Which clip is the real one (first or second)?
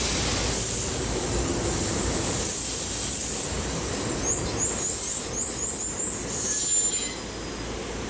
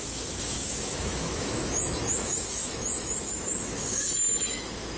first